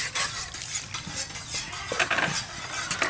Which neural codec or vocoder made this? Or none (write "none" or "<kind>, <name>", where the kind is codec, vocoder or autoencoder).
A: none